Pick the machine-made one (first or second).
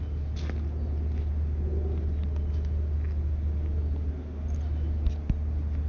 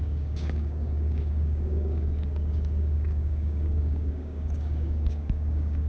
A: second